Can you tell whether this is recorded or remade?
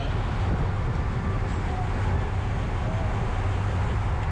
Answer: recorded